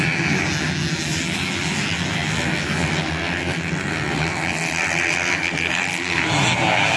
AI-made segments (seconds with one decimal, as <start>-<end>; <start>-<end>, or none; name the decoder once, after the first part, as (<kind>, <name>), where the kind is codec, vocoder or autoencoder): 5.3-6.3 (codec, SNAC)